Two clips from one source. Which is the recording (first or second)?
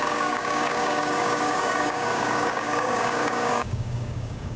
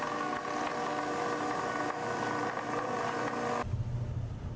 second